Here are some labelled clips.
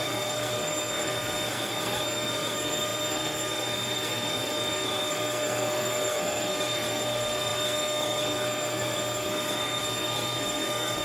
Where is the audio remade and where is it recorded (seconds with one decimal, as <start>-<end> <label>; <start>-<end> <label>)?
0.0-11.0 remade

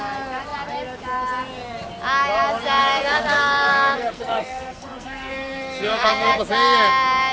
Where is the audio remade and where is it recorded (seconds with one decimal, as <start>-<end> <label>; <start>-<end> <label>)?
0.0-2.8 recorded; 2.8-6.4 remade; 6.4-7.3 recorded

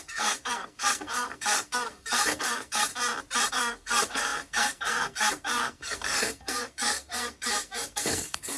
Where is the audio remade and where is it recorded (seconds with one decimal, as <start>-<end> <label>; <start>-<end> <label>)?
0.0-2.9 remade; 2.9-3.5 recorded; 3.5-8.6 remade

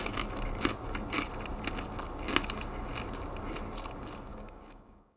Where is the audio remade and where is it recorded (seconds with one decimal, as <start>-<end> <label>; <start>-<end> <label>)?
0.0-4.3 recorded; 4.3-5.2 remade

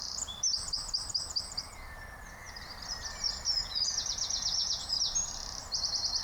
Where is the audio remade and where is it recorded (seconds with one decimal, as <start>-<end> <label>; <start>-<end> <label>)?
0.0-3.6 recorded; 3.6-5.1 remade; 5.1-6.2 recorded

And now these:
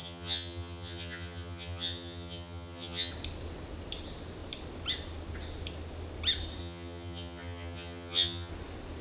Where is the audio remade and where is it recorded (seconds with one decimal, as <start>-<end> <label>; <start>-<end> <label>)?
0.0-3.1 remade; 3.1-6.6 recorded; 6.6-8.5 remade; 8.5-9.0 recorded